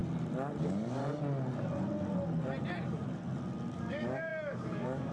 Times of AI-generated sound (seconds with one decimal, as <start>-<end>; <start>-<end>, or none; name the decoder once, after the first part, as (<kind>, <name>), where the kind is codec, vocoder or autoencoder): 0.6-1.0 (codec, DAC); 3.7-5.1